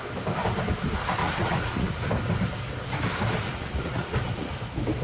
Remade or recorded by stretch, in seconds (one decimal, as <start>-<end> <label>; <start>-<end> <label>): 0.0-1.2 recorded; 1.2-2.1 remade; 2.1-3.4 recorded; 3.4-4.5 remade; 4.5-5.0 recorded